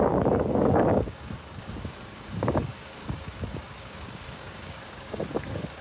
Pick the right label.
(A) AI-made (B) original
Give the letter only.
A